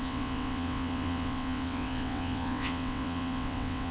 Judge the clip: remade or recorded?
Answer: remade